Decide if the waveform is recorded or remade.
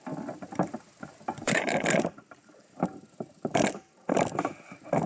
remade